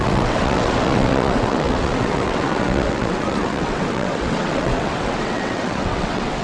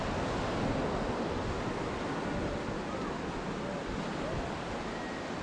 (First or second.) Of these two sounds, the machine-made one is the first